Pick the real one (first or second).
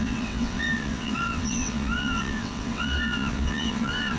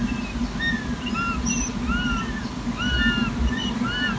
second